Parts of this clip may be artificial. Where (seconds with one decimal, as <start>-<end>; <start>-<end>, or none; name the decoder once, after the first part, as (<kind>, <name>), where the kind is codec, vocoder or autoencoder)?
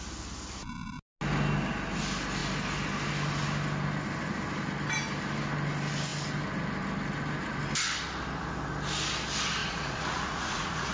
9.6-10.9 (vocoder, Vocos)